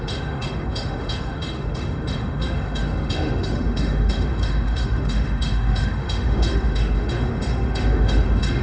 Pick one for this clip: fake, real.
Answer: fake